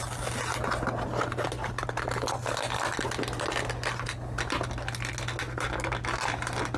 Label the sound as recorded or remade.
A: recorded